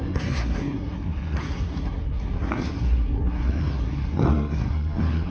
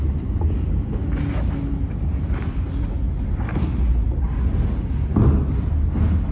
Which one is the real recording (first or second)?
second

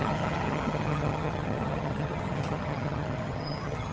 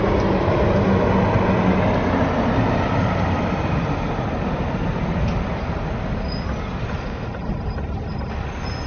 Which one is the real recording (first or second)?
second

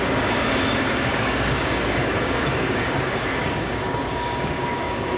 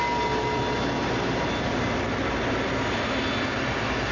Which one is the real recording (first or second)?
second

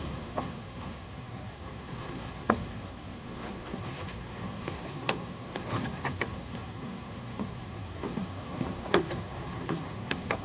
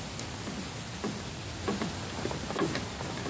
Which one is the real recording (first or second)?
second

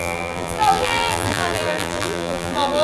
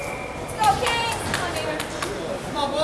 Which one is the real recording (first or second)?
second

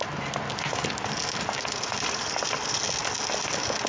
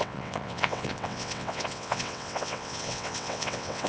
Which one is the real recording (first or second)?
first